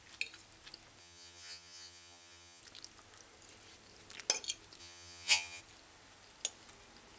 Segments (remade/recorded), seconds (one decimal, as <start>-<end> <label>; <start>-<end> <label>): 0.0-1.0 recorded; 1.0-2.6 remade; 2.6-4.8 recorded; 4.8-5.6 remade; 5.6-7.2 recorded